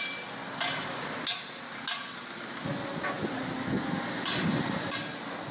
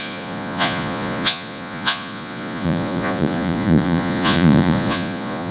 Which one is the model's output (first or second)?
second